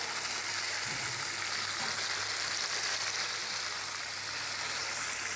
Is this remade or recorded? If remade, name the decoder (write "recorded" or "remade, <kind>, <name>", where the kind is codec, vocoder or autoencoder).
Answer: recorded